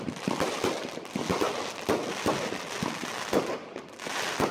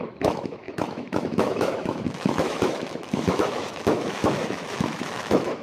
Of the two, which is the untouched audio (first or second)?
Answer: first